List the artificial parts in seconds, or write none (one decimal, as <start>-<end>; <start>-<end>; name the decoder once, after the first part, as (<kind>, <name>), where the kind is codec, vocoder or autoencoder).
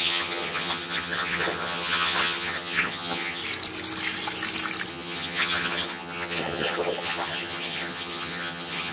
0.0-3.4 (vocoder, HiFi-GAN); 4.9-8.9